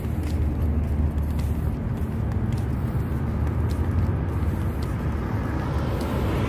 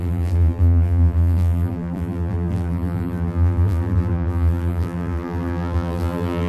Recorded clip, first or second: first